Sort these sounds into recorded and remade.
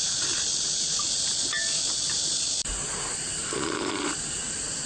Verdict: recorded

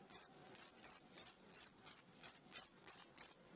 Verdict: remade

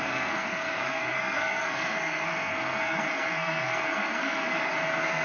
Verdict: remade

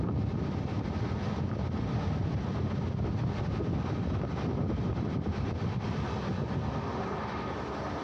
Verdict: recorded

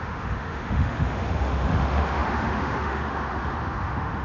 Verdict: remade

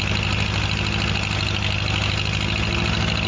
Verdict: recorded